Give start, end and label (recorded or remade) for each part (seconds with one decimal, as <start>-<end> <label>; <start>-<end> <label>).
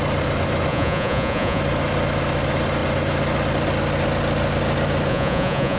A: 0.0-0.7 recorded; 0.7-1.6 remade; 1.6-5.1 recorded; 5.1-5.8 remade